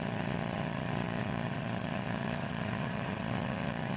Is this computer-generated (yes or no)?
yes